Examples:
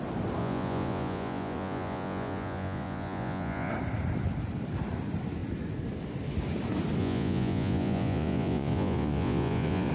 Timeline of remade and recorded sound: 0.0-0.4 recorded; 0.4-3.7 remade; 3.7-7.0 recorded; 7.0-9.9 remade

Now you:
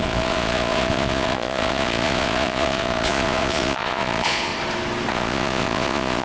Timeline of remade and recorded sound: 0.0-4.5 remade; 4.5-5.1 recorded; 5.1-6.2 remade

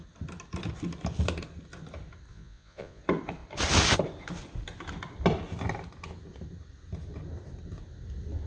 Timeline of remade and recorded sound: 0.0-2.3 recorded; 2.3-3.0 remade; 3.0-8.5 recorded

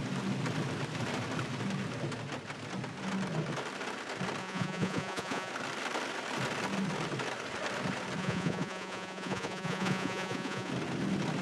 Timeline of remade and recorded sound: 0.0-4.4 recorded; 4.4-5.5 remade; 5.5-8.2 recorded; 8.2-10.7 remade; 10.7-11.4 recorded

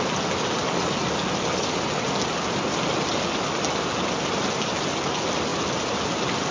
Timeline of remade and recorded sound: 0.0-6.5 recorded